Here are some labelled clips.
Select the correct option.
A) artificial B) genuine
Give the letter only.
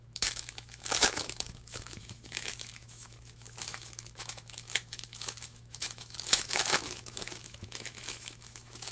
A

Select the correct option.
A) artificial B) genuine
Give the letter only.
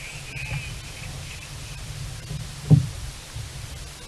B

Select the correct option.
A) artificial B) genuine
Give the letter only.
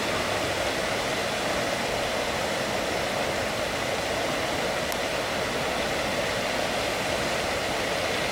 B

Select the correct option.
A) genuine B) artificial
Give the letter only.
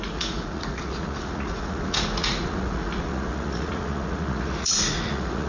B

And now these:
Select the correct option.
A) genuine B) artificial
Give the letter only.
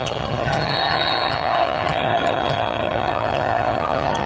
B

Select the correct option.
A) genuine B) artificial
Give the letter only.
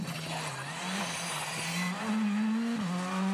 A